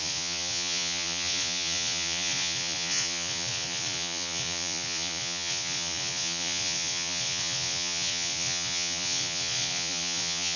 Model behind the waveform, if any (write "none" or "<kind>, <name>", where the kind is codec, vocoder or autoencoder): vocoder, Vocos